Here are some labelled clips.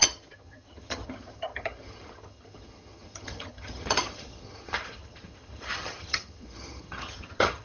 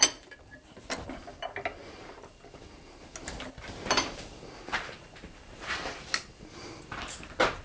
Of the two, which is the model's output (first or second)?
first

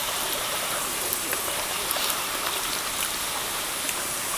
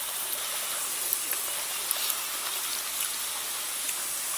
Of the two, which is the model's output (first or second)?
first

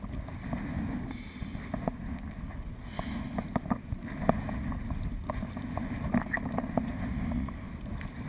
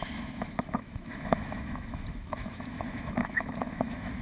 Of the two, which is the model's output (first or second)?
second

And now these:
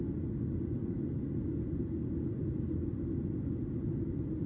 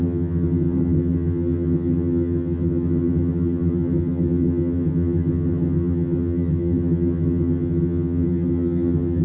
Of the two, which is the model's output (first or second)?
second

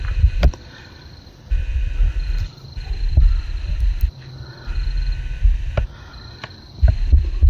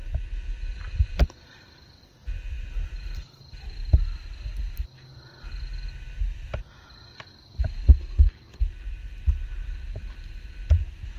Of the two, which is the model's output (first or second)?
first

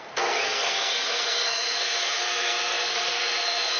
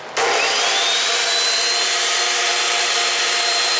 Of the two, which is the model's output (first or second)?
first